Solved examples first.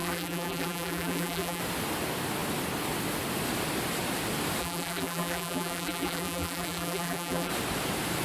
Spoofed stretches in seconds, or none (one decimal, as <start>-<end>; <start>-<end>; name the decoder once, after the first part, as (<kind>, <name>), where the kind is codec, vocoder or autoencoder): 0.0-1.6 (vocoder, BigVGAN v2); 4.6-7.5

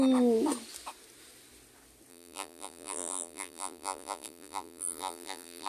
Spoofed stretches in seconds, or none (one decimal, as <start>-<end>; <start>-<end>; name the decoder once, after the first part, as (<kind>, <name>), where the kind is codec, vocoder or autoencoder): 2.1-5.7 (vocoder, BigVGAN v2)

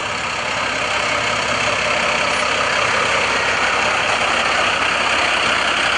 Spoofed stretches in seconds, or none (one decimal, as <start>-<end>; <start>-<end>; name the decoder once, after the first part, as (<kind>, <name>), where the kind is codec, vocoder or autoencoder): none